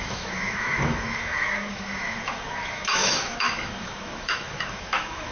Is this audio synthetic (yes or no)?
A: yes